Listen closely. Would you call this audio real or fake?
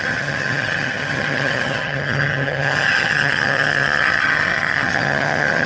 fake